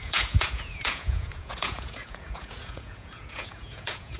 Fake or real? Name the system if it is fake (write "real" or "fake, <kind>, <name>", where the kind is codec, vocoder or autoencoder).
fake, vocoder, Vocos